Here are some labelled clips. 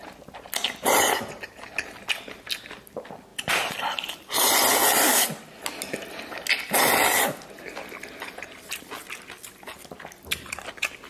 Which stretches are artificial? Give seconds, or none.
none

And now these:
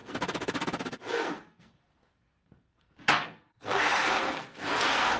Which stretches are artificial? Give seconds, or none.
0.0-5.2 (codec, SNAC)

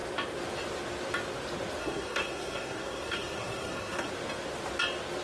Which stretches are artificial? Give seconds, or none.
1.8-4.1 (codec, SNAC)

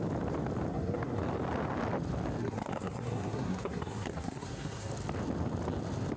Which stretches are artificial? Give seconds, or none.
0.7-1.2 (codec, SNAC); 2.4-4.9

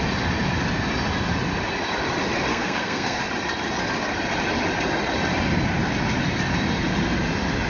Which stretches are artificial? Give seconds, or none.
2.5-3.2 (codec, SNAC)

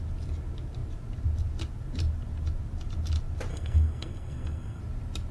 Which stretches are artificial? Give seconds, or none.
3.5-4.8 (codec, SNAC)